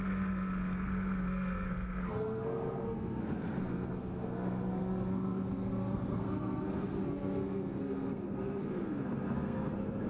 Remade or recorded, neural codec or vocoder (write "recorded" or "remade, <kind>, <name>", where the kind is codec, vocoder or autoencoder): remade, codec, SNAC